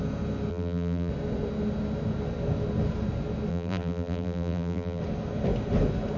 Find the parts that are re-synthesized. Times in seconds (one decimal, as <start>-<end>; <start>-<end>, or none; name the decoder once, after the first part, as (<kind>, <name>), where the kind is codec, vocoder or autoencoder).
0.5-1.1 (vocoder, BigVGAN v2); 3.5-5.0